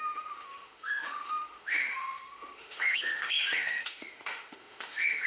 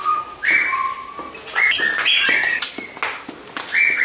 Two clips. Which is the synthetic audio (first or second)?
first